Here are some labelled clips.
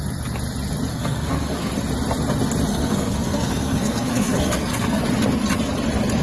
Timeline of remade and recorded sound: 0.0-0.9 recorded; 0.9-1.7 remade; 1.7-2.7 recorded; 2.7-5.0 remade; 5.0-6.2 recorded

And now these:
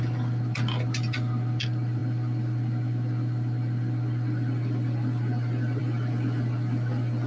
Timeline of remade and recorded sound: 0.0-7.3 recorded

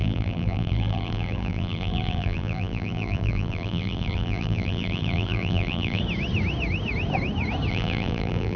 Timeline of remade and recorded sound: 0.0-6.0 remade; 6.0-7.7 recorded; 7.7-8.6 remade

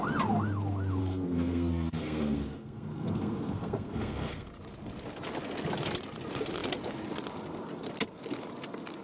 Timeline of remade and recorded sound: 0.0-1.0 recorded; 1.0-4.5 remade; 4.5-9.0 recorded

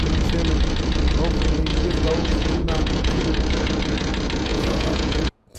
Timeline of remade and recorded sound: 0.0-1.7 recorded; 1.7-3.2 remade; 3.2-4.5 recorded; 4.5-5.6 remade

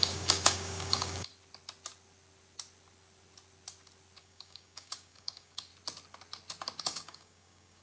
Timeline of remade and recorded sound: 0.0-1.3 remade; 1.3-4.2 recorded; 4.2-5.7 remade; 5.7-6.8 recorded; 6.8-7.8 remade

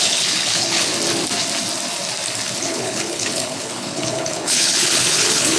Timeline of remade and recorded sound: 0.0-0.9 remade; 0.9-2.6 recorded; 2.6-5.6 remade

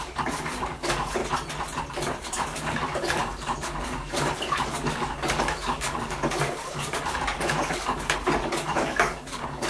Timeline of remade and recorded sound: 0.0-1.2 remade; 1.2-2.3 recorded; 2.3-9.7 remade